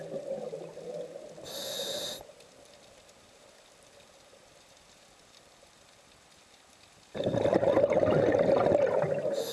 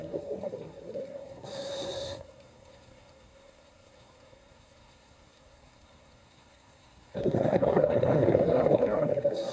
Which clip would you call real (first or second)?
first